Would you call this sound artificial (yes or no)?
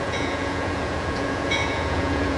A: yes